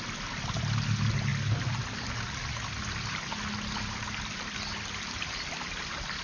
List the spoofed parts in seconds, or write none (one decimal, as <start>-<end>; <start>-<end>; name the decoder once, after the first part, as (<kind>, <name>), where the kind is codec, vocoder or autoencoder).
none